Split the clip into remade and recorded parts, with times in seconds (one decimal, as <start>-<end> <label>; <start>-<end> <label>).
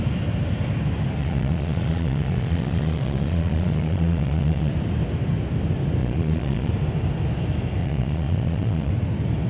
0.0-1.2 recorded; 1.2-4.7 remade; 4.7-6.0 recorded; 6.0-6.7 remade; 6.7-7.8 recorded; 7.8-8.9 remade; 8.9-9.5 recorded